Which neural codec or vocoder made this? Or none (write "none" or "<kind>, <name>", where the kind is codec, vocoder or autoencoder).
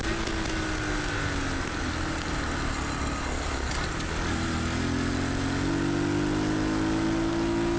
none